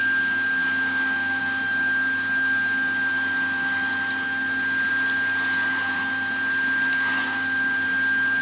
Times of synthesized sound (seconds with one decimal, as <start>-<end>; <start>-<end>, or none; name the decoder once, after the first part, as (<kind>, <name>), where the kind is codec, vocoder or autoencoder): 0.6-1.4 (codec, DAC)